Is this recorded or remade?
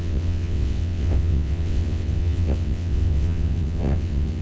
remade